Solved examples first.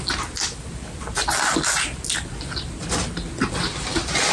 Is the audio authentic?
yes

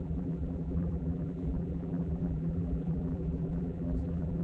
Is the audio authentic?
no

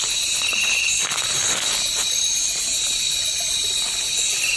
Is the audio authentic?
yes